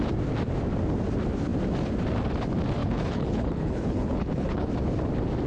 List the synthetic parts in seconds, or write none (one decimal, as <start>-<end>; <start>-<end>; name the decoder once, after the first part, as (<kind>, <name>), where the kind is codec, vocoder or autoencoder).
2.8-4.7 (codec, HILCodec)